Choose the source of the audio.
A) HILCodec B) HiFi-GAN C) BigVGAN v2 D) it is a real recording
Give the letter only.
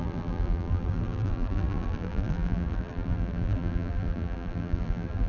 C